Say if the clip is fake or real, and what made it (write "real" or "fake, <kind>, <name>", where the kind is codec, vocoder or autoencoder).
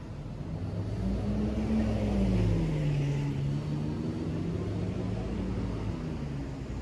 real